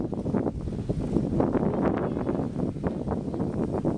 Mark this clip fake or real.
real